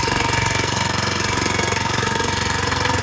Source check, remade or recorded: remade